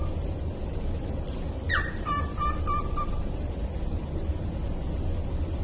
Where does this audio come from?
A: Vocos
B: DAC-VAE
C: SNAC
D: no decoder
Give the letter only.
D